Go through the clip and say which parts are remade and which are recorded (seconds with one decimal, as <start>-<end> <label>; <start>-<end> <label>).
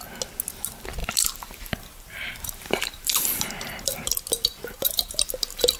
0.0-1.0 recorded; 1.0-4.1 remade; 4.1-4.5 recorded; 4.5-5.8 remade